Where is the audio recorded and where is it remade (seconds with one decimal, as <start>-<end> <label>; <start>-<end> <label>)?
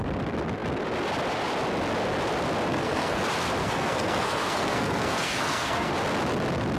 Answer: 0.0-2.7 recorded; 2.7-3.2 remade; 3.2-3.6 recorded; 3.6-5.9 remade; 5.9-6.8 recorded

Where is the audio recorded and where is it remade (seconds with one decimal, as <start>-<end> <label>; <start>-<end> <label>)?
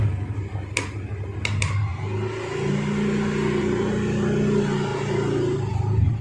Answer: 0.0-6.2 recorded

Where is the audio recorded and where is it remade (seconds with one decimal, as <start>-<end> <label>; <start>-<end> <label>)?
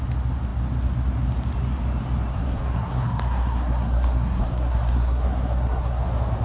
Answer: 0.0-2.3 recorded; 2.3-6.0 remade; 6.0-6.4 recorded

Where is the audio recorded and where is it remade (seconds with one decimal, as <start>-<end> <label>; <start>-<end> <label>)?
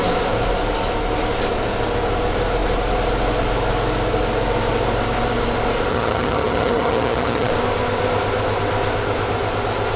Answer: 0.0-5.9 recorded; 5.9-7.5 remade; 7.5-10.0 recorded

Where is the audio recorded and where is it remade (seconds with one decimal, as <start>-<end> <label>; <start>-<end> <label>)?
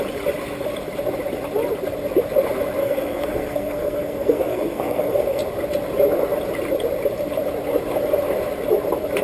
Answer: 0.0-2.8 recorded; 2.8-5.4 remade; 5.4-9.2 recorded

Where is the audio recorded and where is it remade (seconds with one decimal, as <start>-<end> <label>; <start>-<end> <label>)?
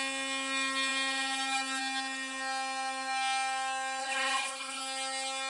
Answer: 0.0-4.0 recorded; 4.0-4.8 remade; 4.8-5.5 recorded